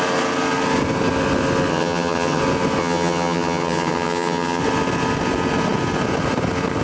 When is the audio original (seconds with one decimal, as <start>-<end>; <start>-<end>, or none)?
0.0-1.7; 2.4-2.8; 4.6-6.8